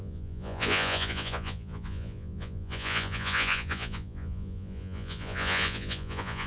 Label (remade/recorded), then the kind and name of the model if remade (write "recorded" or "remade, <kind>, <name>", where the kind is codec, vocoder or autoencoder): remade, vocoder, Vocos